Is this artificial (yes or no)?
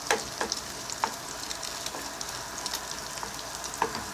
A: no